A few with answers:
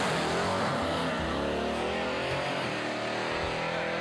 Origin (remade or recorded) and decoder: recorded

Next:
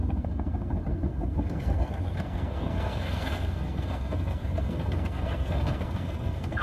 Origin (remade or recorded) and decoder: remade, codec, SNAC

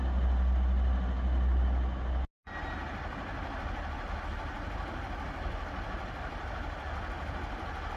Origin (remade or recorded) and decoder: recorded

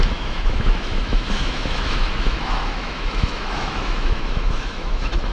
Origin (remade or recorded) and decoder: remade, autoencoder, DAC-VAE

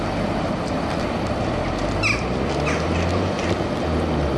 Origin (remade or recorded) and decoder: recorded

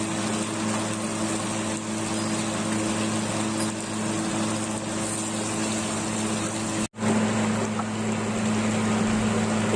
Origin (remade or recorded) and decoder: recorded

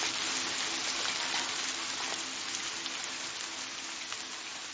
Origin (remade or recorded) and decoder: recorded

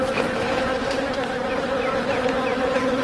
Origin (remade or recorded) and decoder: remade, vocoder, BigVGAN v2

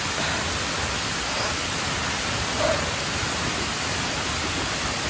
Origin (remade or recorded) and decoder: recorded